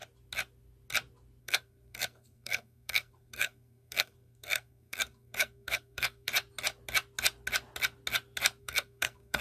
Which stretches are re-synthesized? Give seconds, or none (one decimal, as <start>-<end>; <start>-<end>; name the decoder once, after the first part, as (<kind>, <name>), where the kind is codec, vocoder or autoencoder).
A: 1.4-6.3 (codec, SNAC); 8.6-9.4